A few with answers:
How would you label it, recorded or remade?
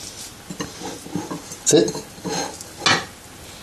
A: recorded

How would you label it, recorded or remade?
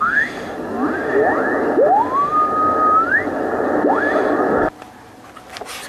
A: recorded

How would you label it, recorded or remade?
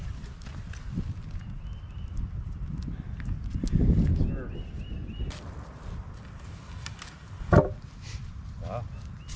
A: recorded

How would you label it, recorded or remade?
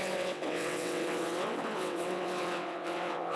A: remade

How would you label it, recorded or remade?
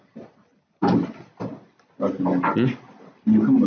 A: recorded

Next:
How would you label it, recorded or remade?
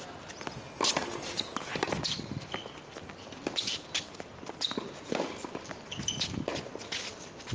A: recorded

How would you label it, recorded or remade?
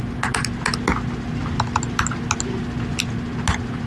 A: recorded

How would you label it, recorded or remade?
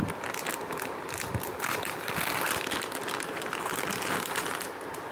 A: recorded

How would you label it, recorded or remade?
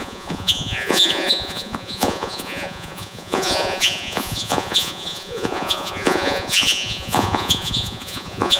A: remade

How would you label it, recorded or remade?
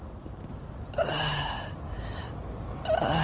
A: recorded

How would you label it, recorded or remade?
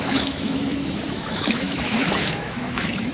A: remade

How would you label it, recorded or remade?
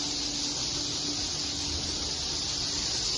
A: recorded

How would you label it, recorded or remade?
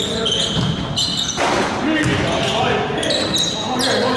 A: recorded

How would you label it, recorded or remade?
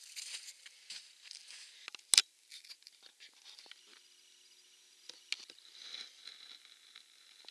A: recorded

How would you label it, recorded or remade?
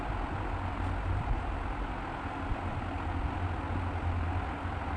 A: recorded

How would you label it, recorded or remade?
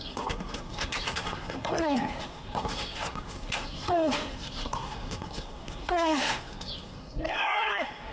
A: remade